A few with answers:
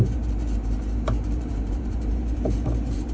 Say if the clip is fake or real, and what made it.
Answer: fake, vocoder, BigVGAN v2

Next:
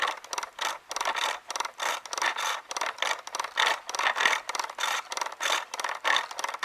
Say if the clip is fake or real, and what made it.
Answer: real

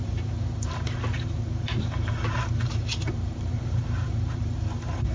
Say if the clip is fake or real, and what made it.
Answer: fake, vocoder, BigVGAN v2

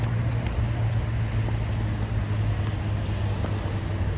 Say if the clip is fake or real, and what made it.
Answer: real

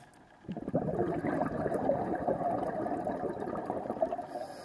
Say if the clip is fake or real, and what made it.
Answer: real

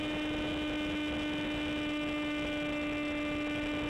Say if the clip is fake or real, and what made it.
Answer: real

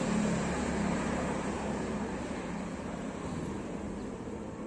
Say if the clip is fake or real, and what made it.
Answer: fake, vocoder, BigVGAN v2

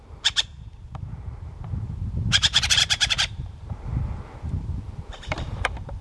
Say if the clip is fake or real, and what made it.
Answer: fake, vocoder, BigVGAN v2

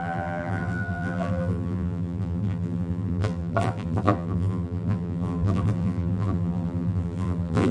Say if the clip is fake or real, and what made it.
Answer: fake, vocoder, BigVGAN v2